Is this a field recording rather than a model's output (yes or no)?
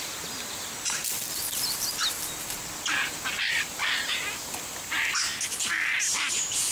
yes